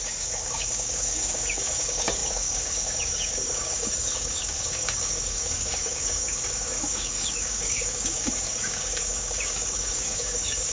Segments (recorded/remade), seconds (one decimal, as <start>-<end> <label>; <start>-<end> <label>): 0.0-10.7 remade